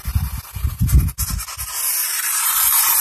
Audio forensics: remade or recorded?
recorded